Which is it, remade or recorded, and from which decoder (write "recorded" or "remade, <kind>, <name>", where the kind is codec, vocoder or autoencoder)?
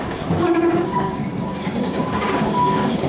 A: remade, codec, DAC